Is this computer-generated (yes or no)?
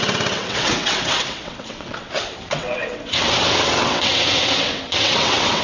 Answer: yes